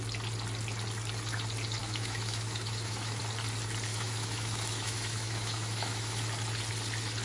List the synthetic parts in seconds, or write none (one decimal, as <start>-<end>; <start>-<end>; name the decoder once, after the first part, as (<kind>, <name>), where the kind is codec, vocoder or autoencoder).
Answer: 1.8-3.2 (autoencoder, DAC-VAE); 3.9-6.2